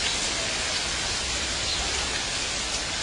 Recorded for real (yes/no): no